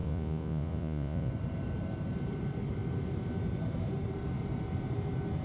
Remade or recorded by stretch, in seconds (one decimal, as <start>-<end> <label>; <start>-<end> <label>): 0.0-1.3 remade; 1.3-5.4 recorded